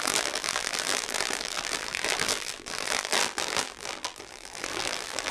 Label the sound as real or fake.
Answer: fake